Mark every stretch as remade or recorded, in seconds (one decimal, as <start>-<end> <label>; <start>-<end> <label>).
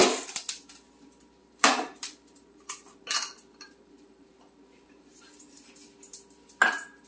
0.0-1.4 recorded; 1.4-5.7 remade; 5.7-7.1 recorded